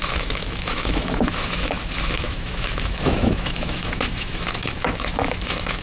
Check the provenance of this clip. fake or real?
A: fake